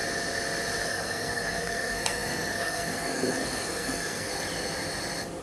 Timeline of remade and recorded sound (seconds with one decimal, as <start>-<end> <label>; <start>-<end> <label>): 0.0-0.8 recorded; 0.8-4.3 remade; 4.3-5.4 recorded